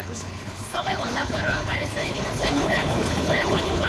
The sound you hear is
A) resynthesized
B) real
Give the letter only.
A